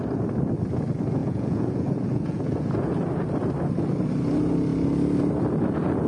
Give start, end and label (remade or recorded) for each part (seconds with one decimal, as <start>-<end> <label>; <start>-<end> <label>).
0.0-1.2 recorded; 1.2-2.9 remade; 2.9-6.1 recorded